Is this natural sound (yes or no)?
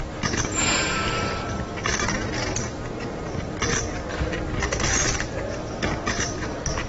yes